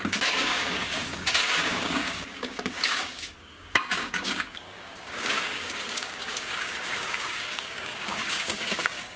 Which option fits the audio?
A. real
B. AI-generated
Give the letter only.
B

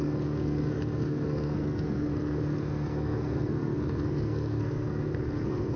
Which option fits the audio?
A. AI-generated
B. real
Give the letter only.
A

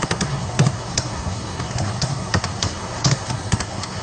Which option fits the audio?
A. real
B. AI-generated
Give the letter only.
B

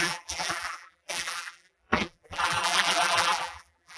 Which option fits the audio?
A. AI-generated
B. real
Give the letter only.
A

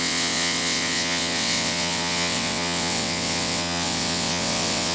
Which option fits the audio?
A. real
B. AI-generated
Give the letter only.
B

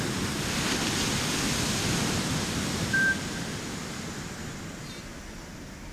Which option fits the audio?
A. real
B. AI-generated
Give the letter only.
A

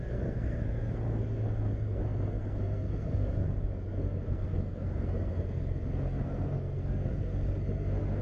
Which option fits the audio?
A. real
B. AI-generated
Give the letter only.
B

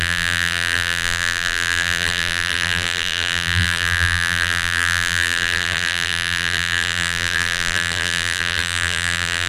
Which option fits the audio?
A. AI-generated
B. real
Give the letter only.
A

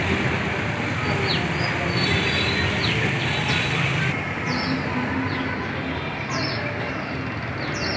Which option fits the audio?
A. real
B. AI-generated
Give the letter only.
A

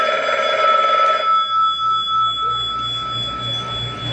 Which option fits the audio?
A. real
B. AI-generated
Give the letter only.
A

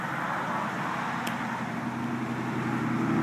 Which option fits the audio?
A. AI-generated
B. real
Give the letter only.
B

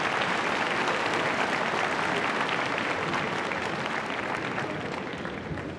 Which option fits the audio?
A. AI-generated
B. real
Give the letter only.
B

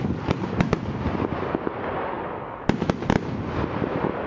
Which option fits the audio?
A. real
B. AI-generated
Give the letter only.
A